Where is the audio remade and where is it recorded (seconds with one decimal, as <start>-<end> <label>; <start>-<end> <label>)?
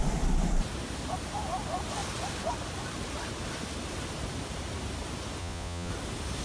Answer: 0.0-5.4 recorded; 5.4-5.9 remade; 5.9-6.4 recorded